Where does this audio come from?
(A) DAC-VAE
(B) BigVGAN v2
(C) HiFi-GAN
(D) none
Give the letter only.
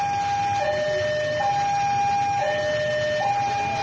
D